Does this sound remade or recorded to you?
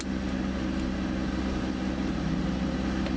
recorded